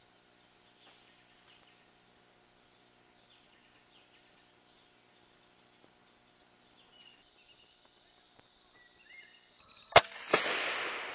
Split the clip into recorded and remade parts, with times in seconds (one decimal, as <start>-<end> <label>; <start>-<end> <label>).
0.0-11.1 recorded